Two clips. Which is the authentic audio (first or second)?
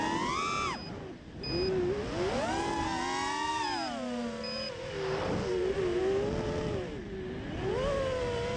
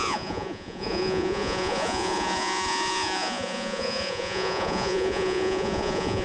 first